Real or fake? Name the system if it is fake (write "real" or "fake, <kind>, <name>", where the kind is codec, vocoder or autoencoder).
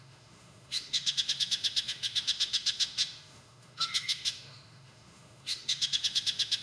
fake, autoencoder, DAC-VAE